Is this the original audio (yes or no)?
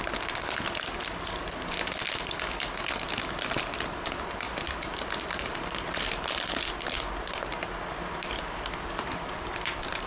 no